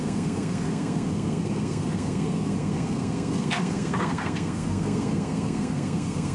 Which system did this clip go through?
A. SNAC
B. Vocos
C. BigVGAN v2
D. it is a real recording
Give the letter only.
A